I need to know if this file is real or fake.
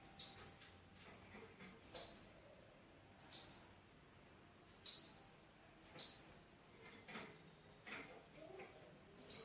real